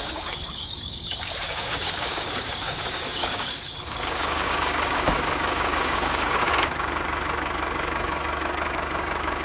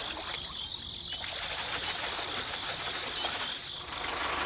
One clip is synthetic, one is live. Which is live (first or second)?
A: second